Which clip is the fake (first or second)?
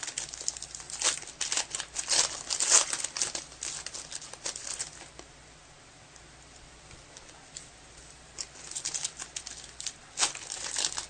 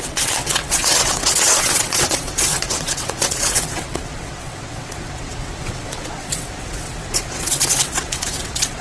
second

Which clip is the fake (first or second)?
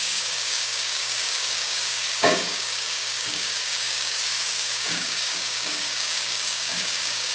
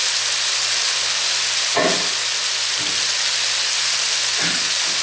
first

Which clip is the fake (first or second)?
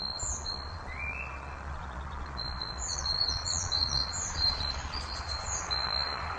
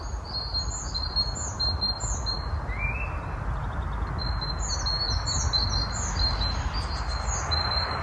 first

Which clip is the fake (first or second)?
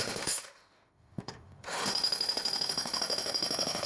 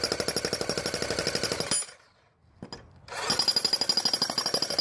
first